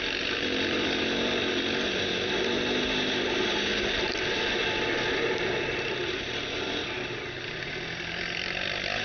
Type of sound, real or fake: real